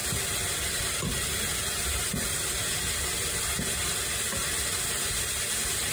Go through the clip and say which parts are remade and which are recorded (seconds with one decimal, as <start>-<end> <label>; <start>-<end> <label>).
0.0-5.9 recorded